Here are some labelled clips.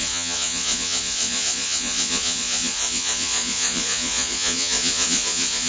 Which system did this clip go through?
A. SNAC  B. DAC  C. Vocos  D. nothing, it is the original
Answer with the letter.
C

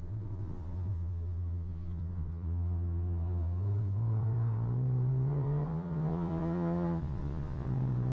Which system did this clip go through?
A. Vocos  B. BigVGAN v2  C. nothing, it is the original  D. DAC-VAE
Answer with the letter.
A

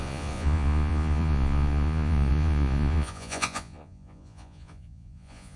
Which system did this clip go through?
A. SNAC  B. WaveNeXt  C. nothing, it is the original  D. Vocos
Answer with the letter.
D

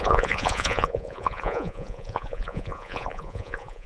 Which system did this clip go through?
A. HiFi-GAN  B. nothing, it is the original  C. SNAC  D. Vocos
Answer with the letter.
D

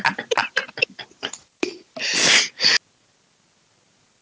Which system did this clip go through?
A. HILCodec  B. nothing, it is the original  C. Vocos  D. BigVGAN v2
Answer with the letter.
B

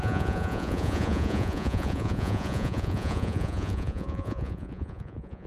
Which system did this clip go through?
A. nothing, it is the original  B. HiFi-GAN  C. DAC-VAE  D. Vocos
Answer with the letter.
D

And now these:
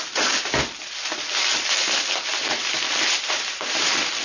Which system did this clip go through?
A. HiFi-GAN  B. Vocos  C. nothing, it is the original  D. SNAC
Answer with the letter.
C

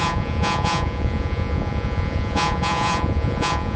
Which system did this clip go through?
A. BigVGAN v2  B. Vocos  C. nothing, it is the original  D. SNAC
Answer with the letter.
B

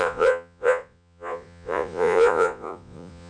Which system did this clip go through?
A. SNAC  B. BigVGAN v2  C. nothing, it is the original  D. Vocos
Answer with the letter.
D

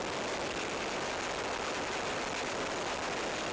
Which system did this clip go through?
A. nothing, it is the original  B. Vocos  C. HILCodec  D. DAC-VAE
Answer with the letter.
A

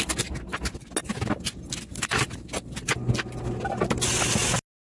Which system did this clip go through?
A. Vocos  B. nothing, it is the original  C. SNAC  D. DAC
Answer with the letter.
B